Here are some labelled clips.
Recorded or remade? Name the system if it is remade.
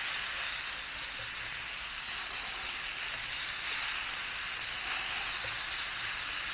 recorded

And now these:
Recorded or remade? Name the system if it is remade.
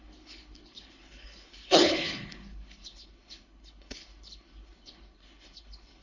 remade, codec, HILCodec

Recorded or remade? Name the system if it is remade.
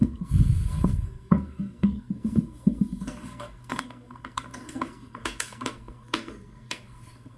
remade, codec, SNAC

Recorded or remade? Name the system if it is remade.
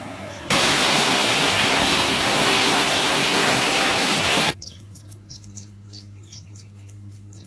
remade, codec, SNAC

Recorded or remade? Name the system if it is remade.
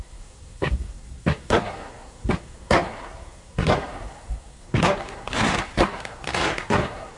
remade, codec, SNAC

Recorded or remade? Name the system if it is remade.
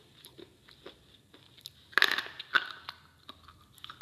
recorded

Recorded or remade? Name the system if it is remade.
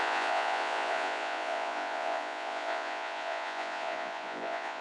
remade, vocoder, Vocos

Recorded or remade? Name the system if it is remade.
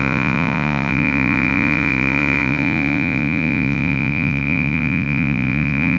remade, vocoder, Vocos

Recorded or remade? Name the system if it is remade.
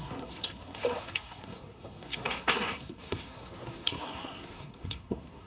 remade, codec, SNAC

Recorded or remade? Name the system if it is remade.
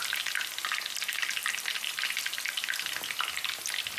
recorded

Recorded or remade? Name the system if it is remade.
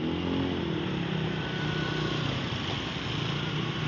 recorded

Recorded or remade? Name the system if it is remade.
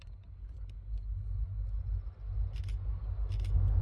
recorded